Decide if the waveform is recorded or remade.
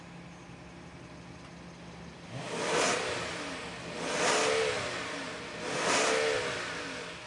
recorded